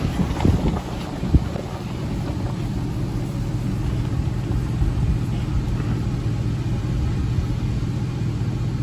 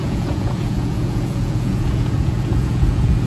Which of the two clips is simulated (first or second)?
second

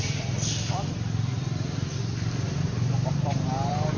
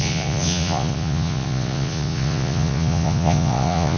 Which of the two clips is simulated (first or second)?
second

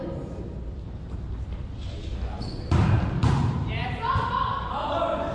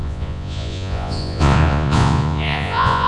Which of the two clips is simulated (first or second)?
second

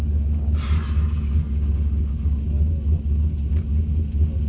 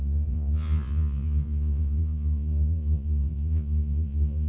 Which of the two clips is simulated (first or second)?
second